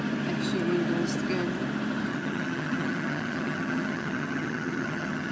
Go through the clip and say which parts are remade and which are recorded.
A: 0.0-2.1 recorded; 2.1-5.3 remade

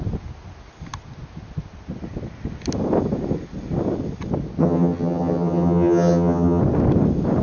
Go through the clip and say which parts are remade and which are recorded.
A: 0.0-4.6 recorded; 4.6-6.6 remade; 6.6-7.4 recorded